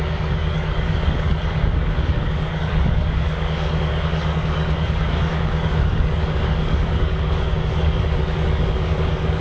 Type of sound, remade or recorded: remade